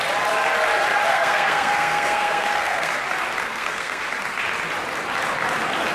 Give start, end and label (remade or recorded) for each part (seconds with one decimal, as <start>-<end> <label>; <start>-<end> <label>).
0.0-1.1 recorded; 1.1-2.9 remade; 2.9-3.4 recorded; 3.4-4.0 remade; 4.0-5.9 recorded